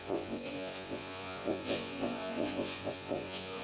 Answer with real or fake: fake